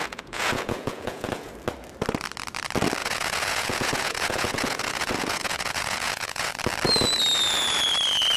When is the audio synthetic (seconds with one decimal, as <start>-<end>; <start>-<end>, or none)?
0.0-1.5; 3.0-6.5